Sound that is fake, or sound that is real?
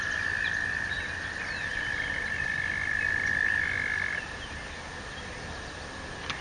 real